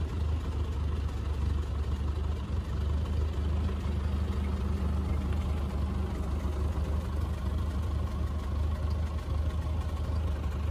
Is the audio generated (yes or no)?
no